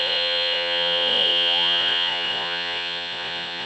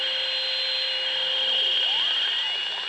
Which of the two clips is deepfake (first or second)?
first